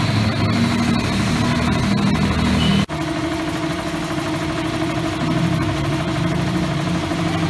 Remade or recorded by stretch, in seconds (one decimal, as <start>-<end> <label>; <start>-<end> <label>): 0.0-7.5 recorded